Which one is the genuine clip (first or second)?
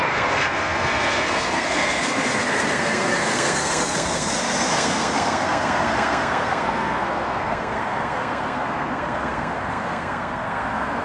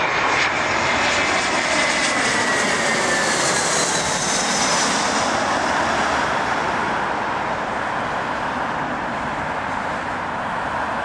second